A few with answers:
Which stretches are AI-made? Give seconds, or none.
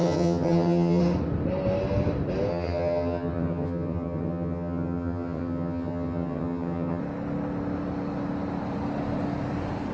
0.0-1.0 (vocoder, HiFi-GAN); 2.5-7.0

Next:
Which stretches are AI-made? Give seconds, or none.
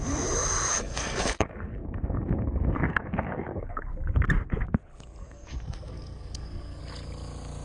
0.7-3.9 (codec, SNAC); 5.2-6.8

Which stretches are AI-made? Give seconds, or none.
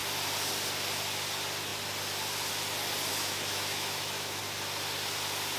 3.1-4.4 (autoencoder, DAC-VAE)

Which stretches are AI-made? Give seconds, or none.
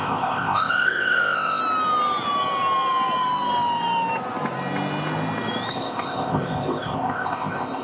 0.0-1.6 (codec, ZipCodec); 5.7-7.8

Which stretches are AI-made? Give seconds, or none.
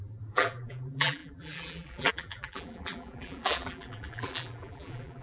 0.0-5.2 (vocoder, BigVGAN v2)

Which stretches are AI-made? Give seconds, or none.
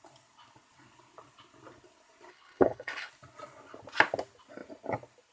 2.3-3.1 (codec, HILCodec)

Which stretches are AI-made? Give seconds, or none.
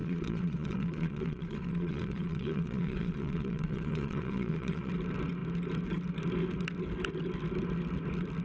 0.0-4.9 (vocoder, Vocos)